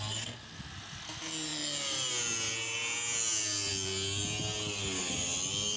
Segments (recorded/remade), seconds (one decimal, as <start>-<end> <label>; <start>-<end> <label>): 0.0-5.8 recorded